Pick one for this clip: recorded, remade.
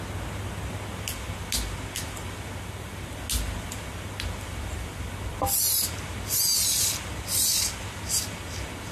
recorded